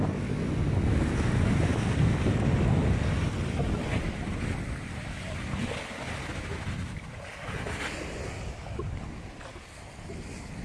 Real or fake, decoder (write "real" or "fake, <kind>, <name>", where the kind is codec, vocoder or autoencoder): real